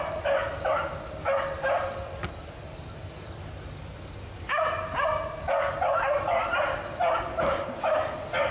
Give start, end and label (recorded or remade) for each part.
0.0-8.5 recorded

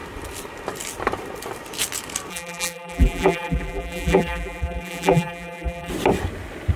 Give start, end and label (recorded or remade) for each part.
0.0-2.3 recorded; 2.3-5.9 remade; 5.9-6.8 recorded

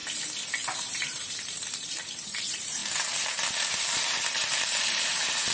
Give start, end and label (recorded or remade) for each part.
0.0-0.8 recorded; 0.8-5.5 remade

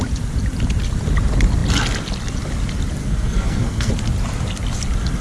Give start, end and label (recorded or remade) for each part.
0.0-3.0 recorded; 3.0-3.9 remade; 3.9-5.2 recorded

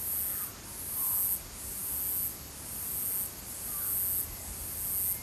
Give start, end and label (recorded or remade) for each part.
0.0-5.2 recorded